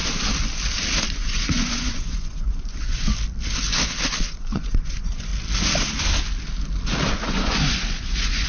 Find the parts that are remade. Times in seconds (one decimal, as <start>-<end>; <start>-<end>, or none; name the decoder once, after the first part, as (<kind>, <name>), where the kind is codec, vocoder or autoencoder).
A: 1.1-3.1 (vocoder, Vocos); 4.2-5.3; 7.1-8.5